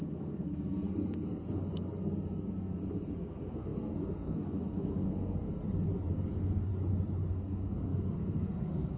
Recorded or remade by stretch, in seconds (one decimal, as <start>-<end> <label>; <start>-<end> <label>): 0.0-5.6 remade; 5.6-6.1 recorded; 6.1-6.7 remade; 6.7-7.3 recorded; 7.3-9.0 remade